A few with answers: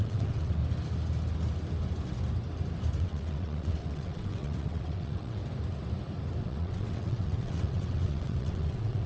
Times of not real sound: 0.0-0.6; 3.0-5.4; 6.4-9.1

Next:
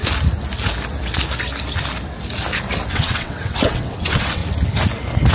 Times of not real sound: 2.9-4.4

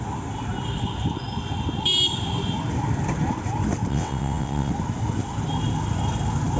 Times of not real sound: 3.9-4.7